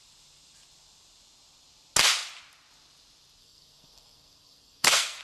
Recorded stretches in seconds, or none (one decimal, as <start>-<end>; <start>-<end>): 0.0-3.4